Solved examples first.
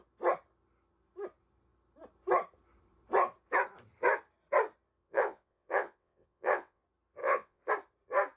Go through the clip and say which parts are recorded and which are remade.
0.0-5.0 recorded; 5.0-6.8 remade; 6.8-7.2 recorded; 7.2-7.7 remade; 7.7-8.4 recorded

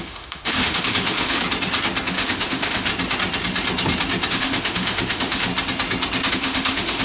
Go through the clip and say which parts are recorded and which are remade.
0.0-1.4 remade; 1.4-2.1 recorded; 2.1-2.9 remade; 2.9-4.3 recorded; 4.3-5.5 remade; 5.5-6.3 recorded; 6.3-7.0 remade

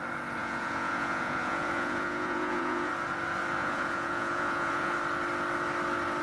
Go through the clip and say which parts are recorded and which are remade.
0.0-0.4 recorded; 0.4-2.9 remade; 2.9-3.6 recorded; 3.6-4.9 remade; 4.9-6.2 recorded